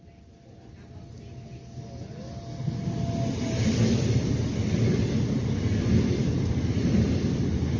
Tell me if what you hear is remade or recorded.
recorded